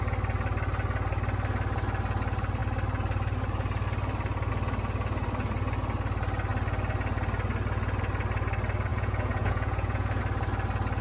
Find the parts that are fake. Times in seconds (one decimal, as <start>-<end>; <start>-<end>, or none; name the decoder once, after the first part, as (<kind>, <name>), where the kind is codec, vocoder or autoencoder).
8.9-10.2 (vocoder, Vocos)